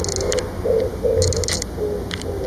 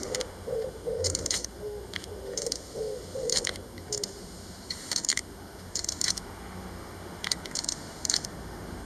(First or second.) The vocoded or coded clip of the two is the second